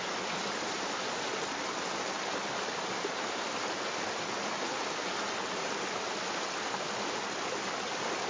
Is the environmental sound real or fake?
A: real